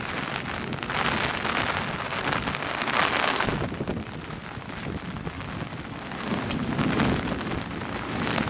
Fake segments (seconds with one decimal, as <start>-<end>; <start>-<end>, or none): none